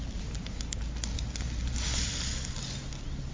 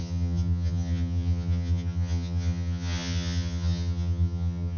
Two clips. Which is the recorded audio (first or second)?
first